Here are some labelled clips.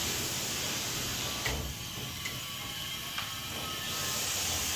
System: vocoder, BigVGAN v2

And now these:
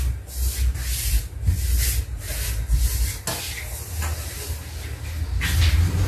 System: none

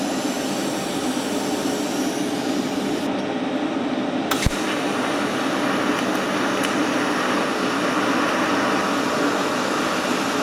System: none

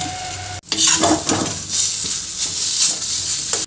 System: none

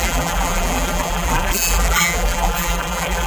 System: vocoder, BigVGAN v2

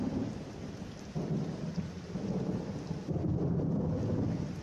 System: vocoder, BigVGAN v2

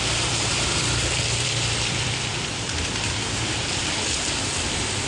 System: vocoder, BigVGAN v2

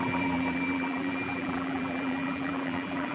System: vocoder, BigVGAN v2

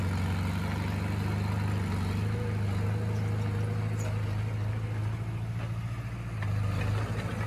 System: none